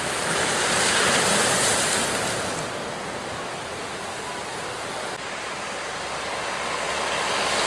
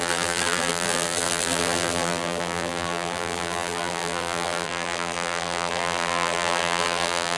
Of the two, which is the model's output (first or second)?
second